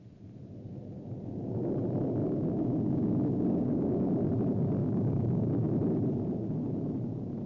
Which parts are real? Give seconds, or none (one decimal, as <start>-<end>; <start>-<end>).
0.0-2.2; 4.1-4.8; 5.7-7.5